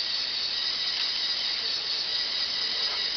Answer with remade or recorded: recorded